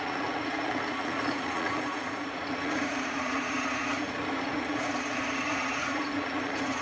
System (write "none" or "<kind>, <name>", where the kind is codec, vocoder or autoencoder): vocoder, Vocos